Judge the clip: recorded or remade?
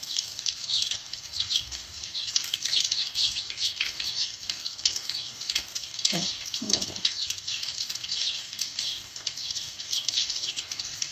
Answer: remade